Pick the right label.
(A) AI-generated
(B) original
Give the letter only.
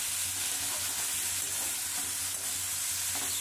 B